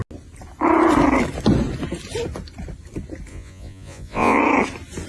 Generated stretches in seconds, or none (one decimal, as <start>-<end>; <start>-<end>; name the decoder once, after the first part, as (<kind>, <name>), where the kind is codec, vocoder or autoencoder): 3.3-4.4 (vocoder, Vocos)